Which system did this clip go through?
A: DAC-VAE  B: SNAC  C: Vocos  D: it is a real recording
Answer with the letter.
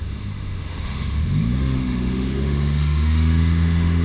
A